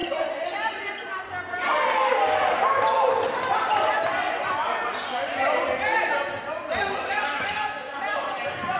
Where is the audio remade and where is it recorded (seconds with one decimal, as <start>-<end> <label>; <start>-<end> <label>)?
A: 0.0-8.8 recorded